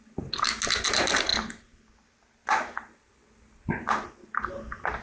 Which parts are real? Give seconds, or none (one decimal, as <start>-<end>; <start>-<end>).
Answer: 0.0-5.0